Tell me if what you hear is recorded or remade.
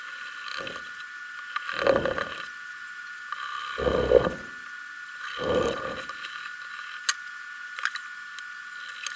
recorded